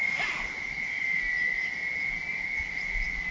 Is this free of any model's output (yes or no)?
yes